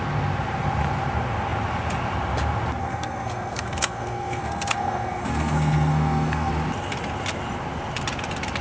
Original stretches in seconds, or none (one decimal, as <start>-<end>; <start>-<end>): 0.0-2.8; 6.5-8.6